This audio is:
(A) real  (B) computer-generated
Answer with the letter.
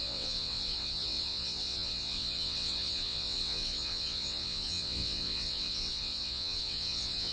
B